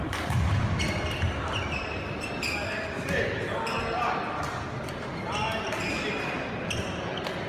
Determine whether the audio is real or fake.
real